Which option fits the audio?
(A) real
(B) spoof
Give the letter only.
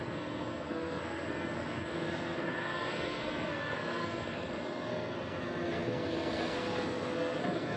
B